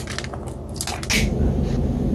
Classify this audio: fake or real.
real